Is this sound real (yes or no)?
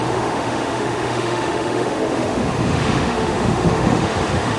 no